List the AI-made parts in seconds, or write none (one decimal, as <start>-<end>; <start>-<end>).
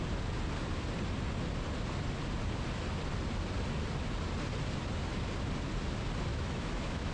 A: 6.3-7.1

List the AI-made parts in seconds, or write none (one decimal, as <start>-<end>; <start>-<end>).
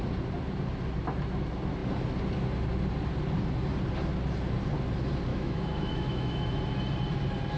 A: 5.3-6.6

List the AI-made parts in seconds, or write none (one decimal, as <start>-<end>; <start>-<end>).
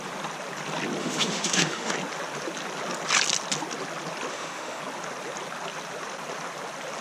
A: 1.0-1.9; 4.3-4.8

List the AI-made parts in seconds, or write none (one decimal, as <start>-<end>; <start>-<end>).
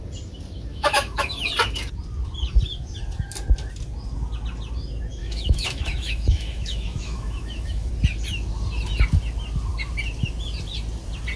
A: 0.7-1.5; 5.2-7.9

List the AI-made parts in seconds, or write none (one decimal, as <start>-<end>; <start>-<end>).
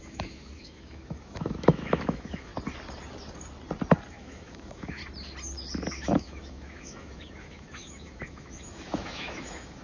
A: 0.0-2.5; 4.1-5.0; 5.9-9.8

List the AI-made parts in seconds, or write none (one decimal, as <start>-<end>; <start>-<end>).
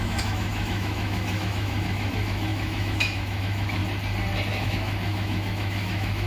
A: 0.0-3.8; 4.5-6.3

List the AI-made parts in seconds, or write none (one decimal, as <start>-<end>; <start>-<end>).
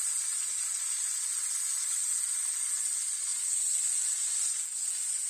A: none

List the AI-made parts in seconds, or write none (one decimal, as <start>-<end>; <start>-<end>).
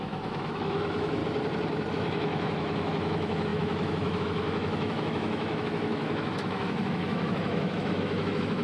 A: 0.0-1.2; 1.9-8.6